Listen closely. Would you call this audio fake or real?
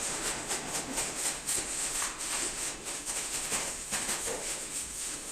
fake